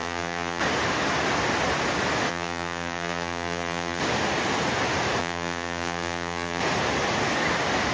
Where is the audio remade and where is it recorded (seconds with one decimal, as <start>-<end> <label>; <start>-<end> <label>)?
0.0-0.6 remade; 0.6-2.3 recorded; 2.3-4.0 remade; 4.0-5.2 recorded; 5.2-6.6 remade; 6.6-7.9 recorded